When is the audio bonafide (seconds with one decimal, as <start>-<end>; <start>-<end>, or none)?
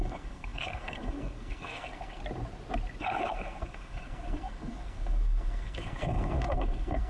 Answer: 2.2-3.0